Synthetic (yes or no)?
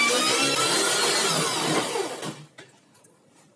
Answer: no